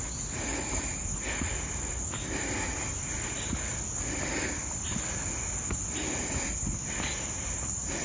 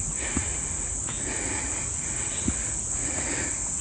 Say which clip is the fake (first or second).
second